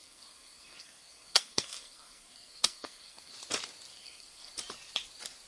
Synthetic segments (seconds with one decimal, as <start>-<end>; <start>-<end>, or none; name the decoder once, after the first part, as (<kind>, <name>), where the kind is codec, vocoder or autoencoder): 0.0-3.3 (codec, SNAC); 3.9-4.5